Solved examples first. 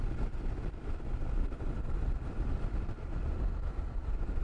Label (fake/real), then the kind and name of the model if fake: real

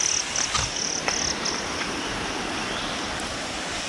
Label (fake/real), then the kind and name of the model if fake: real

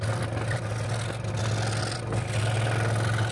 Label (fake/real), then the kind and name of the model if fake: real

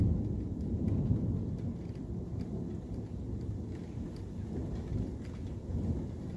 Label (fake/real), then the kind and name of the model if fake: real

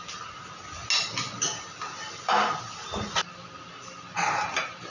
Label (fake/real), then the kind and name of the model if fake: real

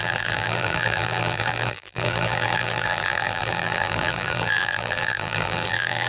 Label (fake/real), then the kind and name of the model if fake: fake, vocoder, BigVGAN v2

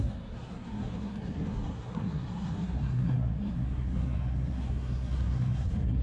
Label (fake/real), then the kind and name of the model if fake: fake, codec, SNAC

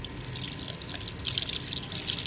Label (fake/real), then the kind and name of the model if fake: real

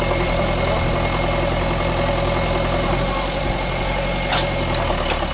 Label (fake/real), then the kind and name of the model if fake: real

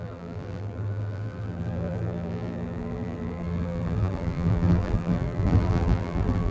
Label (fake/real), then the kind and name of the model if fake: fake, vocoder, BigVGAN v2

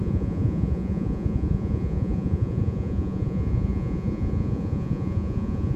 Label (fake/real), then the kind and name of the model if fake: fake, vocoder, Vocos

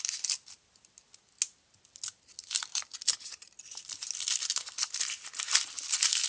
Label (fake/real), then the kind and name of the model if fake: real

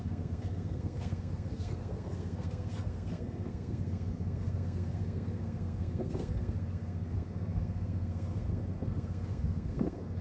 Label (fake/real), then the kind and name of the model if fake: fake, codec, SNAC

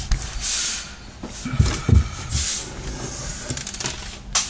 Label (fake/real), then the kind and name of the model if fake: real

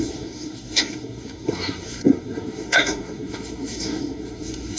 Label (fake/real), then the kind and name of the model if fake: fake, codec, SNAC